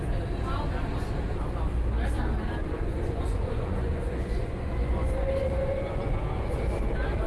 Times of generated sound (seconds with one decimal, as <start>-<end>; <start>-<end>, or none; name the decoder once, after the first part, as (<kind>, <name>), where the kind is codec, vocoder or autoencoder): 2.6-6.2 (vocoder, Vocos)